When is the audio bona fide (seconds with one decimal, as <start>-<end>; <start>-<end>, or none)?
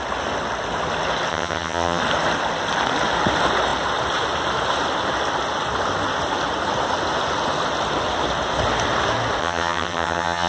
0.0-1.3; 2.0-9.4